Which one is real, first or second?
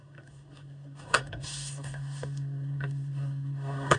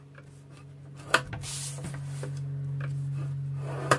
second